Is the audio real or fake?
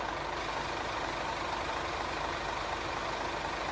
real